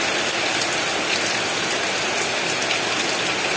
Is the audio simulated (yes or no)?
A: no